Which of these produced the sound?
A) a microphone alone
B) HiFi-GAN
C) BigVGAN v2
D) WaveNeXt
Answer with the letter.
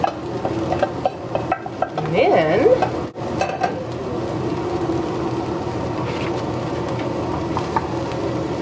A